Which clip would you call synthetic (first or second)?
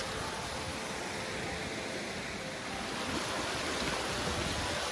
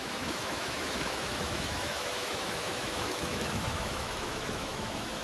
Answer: second